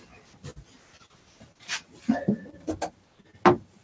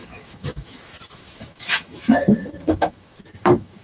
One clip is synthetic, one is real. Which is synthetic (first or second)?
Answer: second